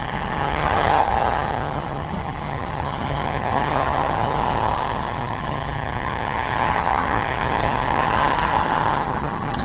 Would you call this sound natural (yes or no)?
no